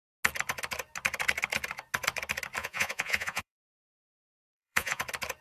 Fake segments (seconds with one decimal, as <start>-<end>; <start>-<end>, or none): 2.6-5.0